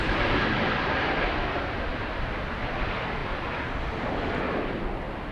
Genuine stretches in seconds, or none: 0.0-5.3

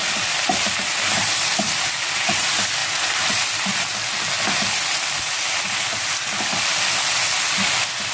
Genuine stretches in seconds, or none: 0.0-8.1

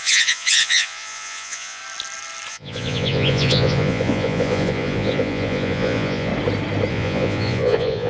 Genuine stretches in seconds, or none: 1.8-2.5; 6.3-6.9

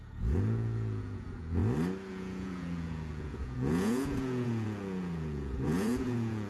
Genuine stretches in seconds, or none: 1.6-2.1

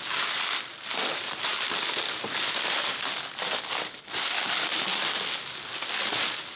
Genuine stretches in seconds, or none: 0.0-6.6